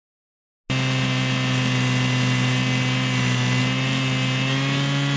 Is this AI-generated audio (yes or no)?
no